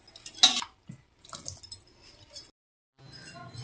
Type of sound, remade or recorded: recorded